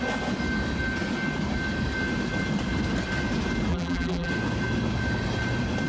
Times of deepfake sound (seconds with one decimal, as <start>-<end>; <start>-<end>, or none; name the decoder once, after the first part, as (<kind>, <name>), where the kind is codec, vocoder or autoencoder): 3.7-4.3 (vocoder, BigVGAN v2)